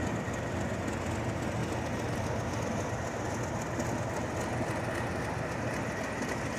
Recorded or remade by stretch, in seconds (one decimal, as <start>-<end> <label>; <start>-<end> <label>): 0.0-6.6 recorded

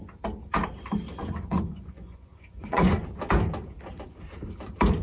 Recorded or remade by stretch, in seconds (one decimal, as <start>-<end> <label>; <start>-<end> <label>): 0.0-1.2 recorded; 1.2-3.0 remade; 3.0-5.0 recorded

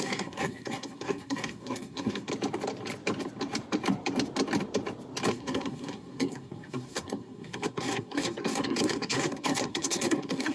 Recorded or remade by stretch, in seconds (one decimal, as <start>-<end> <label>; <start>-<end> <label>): 0.0-2.3 remade; 2.3-5.3 recorded; 5.3-10.5 remade

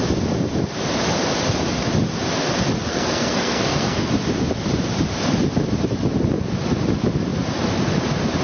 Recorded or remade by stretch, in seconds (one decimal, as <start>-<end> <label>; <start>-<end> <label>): 0.0-2.9 recorded; 2.9-4.1 remade; 4.1-8.4 recorded

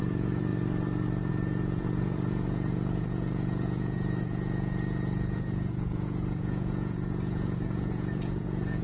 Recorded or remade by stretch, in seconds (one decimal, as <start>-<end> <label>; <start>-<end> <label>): 0.0-0.5 remade; 0.5-1.3 recorded; 1.3-8.8 remade

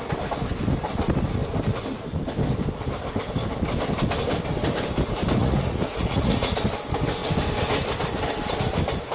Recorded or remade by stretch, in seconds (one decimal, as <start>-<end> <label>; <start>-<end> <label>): 0.0-5.4 recorded; 5.4-6.6 remade; 6.6-9.1 recorded

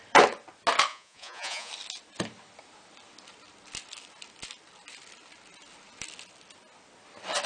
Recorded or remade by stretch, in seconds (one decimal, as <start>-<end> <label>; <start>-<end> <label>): 0.0-0.9 recorded; 0.9-1.7 remade; 1.7-7.5 recorded